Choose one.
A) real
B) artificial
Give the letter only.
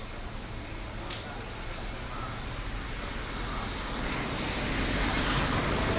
A